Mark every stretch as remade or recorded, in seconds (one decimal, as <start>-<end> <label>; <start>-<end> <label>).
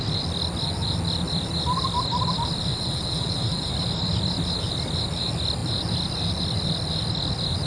0.0-2.7 recorded; 2.7-3.7 remade; 3.7-7.7 recorded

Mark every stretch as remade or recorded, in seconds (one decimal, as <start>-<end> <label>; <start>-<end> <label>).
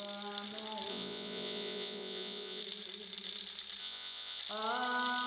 0.0-0.9 recorded; 0.9-2.6 remade; 2.6-3.8 recorded; 3.8-4.4 remade; 4.4-5.3 recorded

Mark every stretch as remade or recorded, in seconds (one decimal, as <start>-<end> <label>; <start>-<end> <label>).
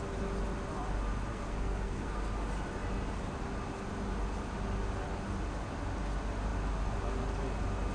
0.0-1.3 recorded; 1.3-2.3 remade; 2.3-7.9 recorded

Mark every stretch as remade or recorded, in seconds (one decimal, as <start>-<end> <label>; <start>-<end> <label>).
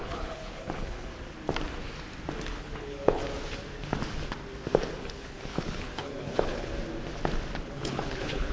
0.0-1.1 remade; 1.1-2.5 recorded; 2.5-3.2 remade; 3.2-5.0 recorded; 5.0-6.7 remade; 6.7-7.6 recorded; 7.6-8.5 remade